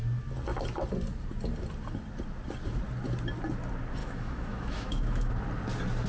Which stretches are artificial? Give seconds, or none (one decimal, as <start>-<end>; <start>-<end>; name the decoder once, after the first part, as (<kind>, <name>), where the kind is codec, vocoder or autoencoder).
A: 4.0-5.3 (autoencoder, DAC-VAE)